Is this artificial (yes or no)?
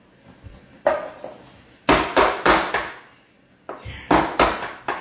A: no